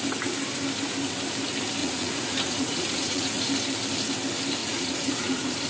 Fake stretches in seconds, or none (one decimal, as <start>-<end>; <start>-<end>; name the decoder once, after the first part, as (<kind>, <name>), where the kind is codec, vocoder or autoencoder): 1.8-3.5 (vocoder, Vocos); 4.6-5.7

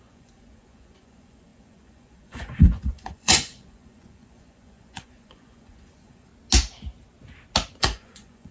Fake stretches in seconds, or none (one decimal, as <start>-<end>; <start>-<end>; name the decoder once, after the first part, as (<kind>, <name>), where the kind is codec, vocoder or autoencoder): 0.0-6.3 (vocoder, Vocos); 7.8-8.5

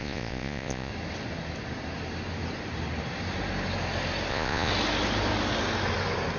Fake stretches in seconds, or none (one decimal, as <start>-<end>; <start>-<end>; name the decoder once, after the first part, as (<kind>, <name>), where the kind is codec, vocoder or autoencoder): 0.0-0.9 (vocoder, Vocos); 4.3-4.7

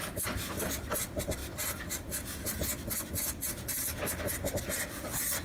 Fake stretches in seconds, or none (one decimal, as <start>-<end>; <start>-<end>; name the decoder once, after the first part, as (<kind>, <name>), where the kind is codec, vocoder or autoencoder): none

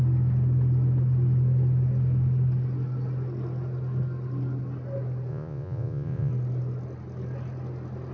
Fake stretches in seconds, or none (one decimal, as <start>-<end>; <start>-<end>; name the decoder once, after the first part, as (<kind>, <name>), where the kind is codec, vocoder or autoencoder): 5.3-6.3 (vocoder, Vocos)

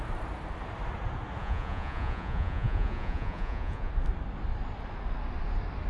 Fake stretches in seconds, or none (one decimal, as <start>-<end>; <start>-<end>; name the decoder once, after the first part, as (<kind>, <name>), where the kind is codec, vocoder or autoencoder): 1.4-3.9 (vocoder, Vocos)